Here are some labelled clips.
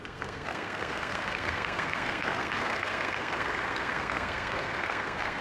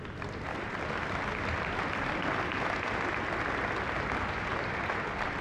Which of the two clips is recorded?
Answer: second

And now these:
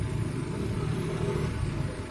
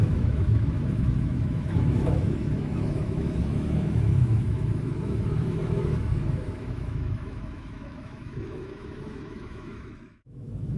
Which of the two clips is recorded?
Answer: first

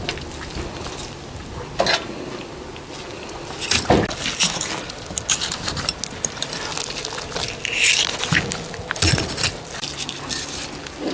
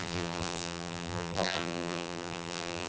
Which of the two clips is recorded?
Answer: first